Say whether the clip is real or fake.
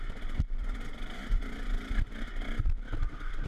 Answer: fake